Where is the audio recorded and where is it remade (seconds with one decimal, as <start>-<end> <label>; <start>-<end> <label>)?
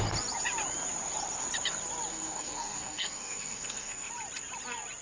0.0-2.1 recorded; 2.1-4.1 remade; 4.1-5.0 recorded